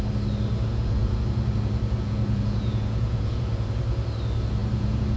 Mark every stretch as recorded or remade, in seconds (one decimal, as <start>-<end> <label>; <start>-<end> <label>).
0.0-0.7 recorded; 0.7-3.8 remade; 3.8-4.6 recorded; 4.6-5.2 remade